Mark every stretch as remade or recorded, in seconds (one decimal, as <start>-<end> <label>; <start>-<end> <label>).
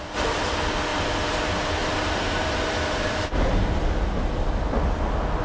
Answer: 0.0-0.9 recorded; 0.9-1.4 remade; 1.4-1.8 recorded; 1.8-3.9 remade; 3.9-5.4 recorded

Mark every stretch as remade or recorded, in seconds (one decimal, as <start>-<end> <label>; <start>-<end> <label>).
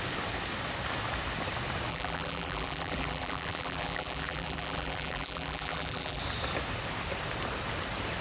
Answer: 0.0-1.9 recorded; 1.9-6.2 remade; 6.2-8.2 recorded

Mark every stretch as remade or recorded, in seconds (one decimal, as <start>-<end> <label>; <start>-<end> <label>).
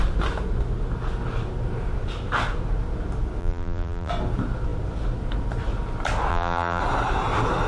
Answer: 0.0-3.4 recorded; 3.4-4.1 remade; 4.1-6.3 recorded; 6.3-6.8 remade; 6.8-7.7 recorded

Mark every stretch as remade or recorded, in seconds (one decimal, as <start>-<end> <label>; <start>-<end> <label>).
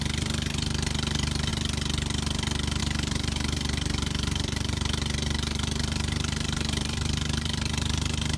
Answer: 0.0-1.5 remade; 1.5-2.8 recorded; 2.8-8.4 remade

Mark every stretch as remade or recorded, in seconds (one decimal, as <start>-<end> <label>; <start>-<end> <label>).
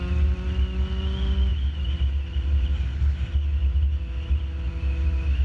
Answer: 0.0-5.4 recorded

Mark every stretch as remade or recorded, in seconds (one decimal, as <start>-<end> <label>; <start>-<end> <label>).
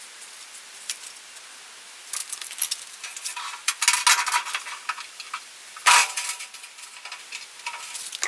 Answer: 0.0-2.2 recorded; 2.2-3.8 remade; 3.8-8.3 recorded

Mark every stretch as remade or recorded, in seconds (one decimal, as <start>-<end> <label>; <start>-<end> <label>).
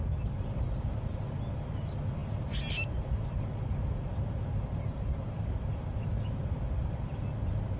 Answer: 0.0-7.8 recorded